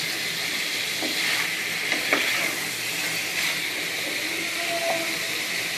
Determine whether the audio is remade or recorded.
recorded